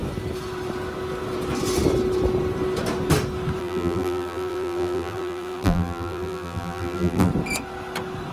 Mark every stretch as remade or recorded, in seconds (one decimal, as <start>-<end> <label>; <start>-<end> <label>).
0.0-3.6 recorded; 3.6-7.3 remade; 7.3-8.3 recorded